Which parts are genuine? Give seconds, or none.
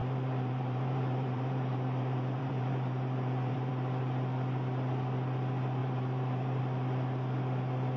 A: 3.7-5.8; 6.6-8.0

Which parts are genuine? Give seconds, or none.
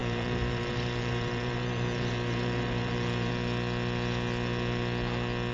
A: 3.3-5.5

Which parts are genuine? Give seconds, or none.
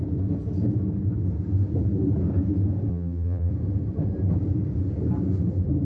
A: 0.0-2.9; 3.5-5.8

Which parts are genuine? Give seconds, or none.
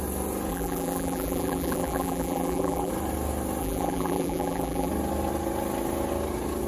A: 0.0-0.5; 2.9-3.6; 4.9-6.7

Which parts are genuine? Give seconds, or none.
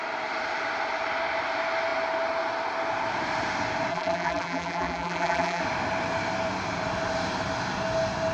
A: 0.0-3.9; 5.6-8.3